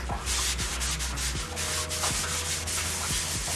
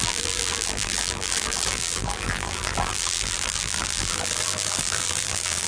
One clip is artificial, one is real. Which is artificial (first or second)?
second